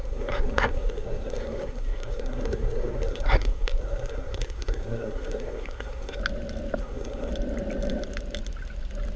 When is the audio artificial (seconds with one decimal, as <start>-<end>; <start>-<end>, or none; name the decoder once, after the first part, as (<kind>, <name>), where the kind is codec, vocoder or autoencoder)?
0.0-6.2 (codec, SNAC); 6.8-7.3